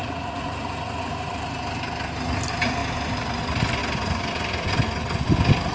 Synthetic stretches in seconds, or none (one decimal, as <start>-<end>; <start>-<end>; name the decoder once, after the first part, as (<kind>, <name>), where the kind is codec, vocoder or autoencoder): 0.0-1.3 (vocoder, Vocos)